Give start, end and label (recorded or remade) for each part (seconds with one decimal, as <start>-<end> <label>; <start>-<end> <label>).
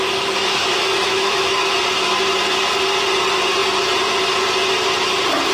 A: 0.0-1.8 remade; 1.8-5.5 recorded